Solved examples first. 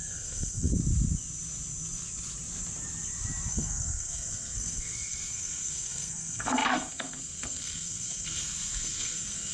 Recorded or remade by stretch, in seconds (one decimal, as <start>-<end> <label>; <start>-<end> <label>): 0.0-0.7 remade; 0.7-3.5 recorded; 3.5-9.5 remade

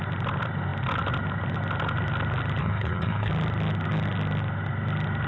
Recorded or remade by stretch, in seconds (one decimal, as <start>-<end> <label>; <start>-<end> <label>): 0.0-2.6 recorded; 2.6-3.3 remade; 3.3-5.3 recorded

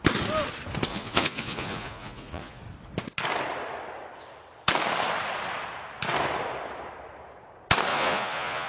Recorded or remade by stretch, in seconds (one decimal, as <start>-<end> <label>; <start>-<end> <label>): 0.0-0.9 recorded; 0.9-2.6 remade; 2.6-7.9 recorded; 7.9-8.7 remade

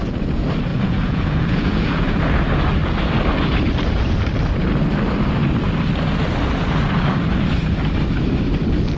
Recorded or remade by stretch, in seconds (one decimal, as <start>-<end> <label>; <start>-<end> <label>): 0.0-0.7 recorded; 0.7-2.2 remade; 2.2-9.0 recorded

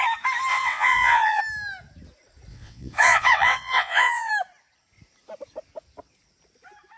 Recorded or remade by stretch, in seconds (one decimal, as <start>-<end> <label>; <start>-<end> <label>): 0.0-0.5 recorded; 0.5-1.4 remade; 1.4-2.5 recorded; 2.5-4.3 remade; 4.3-7.0 recorded

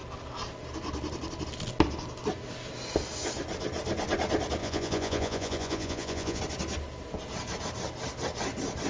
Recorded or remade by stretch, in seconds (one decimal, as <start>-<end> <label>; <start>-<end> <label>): 0.0-4.6 recorded; 4.6-6.4 remade; 6.4-8.9 recorded

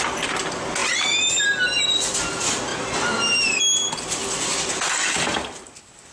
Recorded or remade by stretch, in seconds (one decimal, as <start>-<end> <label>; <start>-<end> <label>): 0.0-0.8 recorded; 0.8-1.3 remade; 1.3-2.7 recorded; 2.7-3.6 remade; 3.6-4.2 recorded; 4.2-6.1 remade

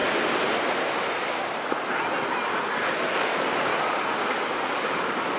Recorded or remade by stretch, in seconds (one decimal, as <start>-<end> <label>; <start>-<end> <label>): 0.0-3.2 recorded; 3.2-3.7 remade; 3.7-4.2 recorded; 4.2-5.4 remade